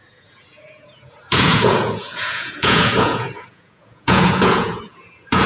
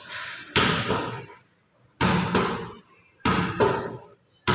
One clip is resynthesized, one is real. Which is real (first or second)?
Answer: second